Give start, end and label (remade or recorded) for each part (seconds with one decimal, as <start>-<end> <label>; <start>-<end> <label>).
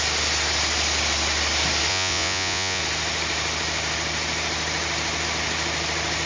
0.0-1.9 recorded; 1.9-2.8 remade; 2.8-6.3 recorded